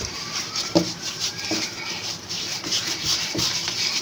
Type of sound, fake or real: fake